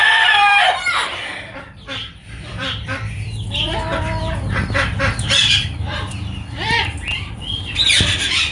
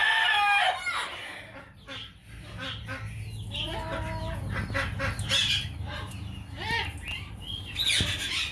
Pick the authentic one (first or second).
second